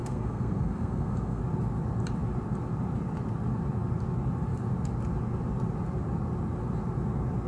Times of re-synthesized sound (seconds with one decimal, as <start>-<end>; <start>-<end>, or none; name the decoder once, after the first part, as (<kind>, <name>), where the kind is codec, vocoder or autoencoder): 0.0-1.4 (codec, SNAC)